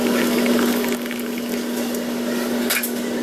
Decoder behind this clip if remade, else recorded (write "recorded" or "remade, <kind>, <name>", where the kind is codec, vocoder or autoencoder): remade, codec, DAC